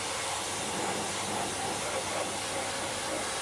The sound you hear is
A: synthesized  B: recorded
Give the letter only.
A